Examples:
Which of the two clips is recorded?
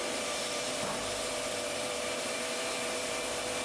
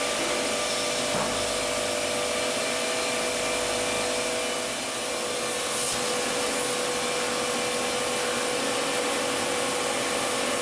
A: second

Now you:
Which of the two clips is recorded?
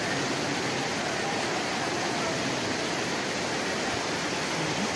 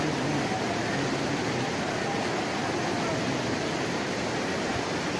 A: second